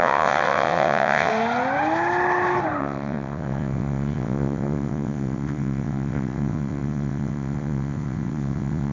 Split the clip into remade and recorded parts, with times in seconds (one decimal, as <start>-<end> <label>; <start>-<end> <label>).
0.0-1.3 remade; 1.3-2.8 recorded; 2.8-8.9 remade